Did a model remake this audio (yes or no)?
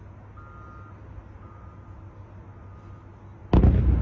no